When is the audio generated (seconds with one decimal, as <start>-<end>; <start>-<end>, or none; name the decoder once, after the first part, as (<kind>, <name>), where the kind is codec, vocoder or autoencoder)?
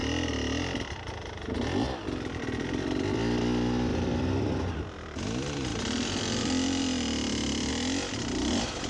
2.0-8.9 (vocoder, BigVGAN v2)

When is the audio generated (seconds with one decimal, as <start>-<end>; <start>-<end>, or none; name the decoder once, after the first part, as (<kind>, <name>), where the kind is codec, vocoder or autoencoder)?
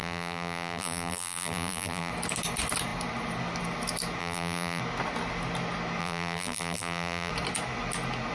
0.0-2.1 (vocoder, BigVGAN v2); 4.2-4.8; 6.0-7.3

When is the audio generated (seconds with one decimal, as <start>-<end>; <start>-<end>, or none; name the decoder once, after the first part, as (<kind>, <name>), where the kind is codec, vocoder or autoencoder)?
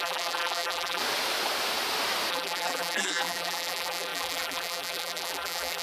0.0-1.0 (vocoder, BigVGAN v2); 2.3-5.8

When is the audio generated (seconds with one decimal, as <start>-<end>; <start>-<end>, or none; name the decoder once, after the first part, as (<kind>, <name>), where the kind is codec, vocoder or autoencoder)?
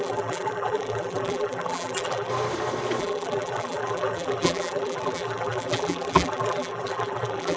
0.0-2.3 (vocoder, BigVGAN v2); 3.0-7.6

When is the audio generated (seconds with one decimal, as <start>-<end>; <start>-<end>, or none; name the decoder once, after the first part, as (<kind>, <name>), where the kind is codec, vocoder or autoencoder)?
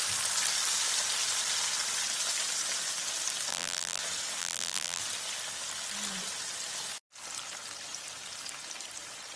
3.5-4.0 (vocoder, BigVGAN v2); 4.4-5.0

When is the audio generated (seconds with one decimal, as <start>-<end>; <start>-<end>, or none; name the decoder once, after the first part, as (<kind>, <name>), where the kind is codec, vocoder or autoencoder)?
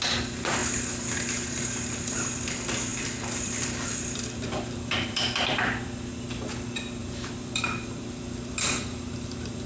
2.9-6.1 (vocoder, BigVGAN v2); 7.0-9.7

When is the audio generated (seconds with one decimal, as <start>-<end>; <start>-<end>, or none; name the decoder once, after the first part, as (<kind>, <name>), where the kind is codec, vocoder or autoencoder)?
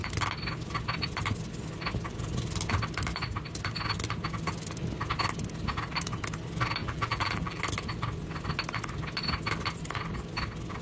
6.8-7.6 (vocoder, BigVGAN v2)